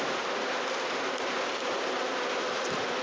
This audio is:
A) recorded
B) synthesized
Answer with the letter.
A